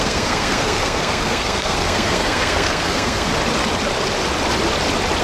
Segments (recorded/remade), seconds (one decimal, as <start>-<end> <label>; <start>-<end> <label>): 0.0-3.3 remade; 3.3-5.2 recorded